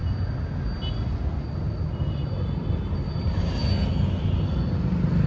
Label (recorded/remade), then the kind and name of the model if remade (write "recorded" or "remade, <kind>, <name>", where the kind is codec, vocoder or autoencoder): recorded